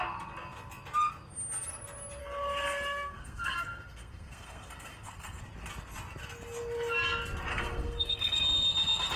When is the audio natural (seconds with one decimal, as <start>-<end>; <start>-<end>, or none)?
0.0-2.2; 5.4-7.5; 8.4-9.2